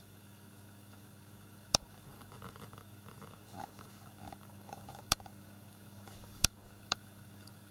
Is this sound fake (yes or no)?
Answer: yes